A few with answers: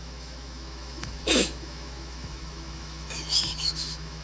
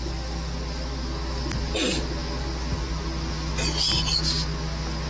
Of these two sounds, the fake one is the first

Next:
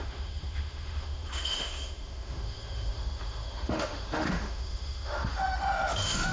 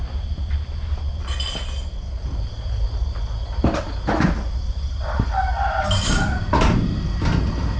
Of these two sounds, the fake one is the first